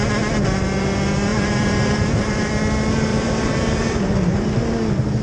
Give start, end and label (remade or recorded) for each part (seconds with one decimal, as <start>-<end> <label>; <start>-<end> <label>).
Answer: 0.0-1.3 recorded; 1.3-2.5 remade; 2.5-3.1 recorded; 3.1-4.6 remade; 4.6-5.2 recorded